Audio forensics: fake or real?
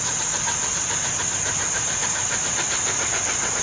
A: real